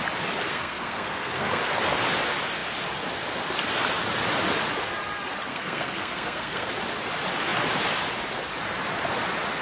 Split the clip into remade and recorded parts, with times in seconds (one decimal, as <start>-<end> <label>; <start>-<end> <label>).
0.0-0.5 recorded; 0.5-1.6 remade; 1.6-5.5 recorded; 5.5-6.7 remade; 6.7-9.6 recorded

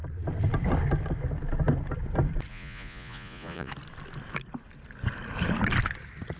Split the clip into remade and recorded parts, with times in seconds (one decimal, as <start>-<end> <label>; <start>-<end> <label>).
0.0-2.5 recorded; 2.5-3.7 remade; 3.7-6.4 recorded

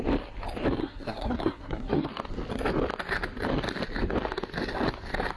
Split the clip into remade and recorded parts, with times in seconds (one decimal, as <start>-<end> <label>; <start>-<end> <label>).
0.0-0.8 recorded; 0.8-2.1 remade; 2.1-5.4 recorded

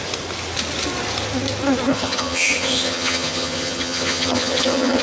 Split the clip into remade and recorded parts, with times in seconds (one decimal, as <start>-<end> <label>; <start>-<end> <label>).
0.0-1.9 recorded; 1.9-5.0 remade

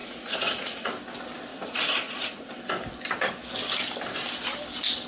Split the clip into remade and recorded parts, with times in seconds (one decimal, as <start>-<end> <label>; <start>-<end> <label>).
0.0-0.9 remade; 0.9-1.5 recorded; 1.5-2.5 remade; 2.5-5.1 recorded

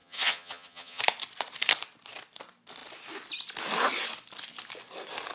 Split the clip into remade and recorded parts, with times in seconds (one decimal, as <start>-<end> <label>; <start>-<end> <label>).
0.0-1.0 remade; 1.0-5.3 recorded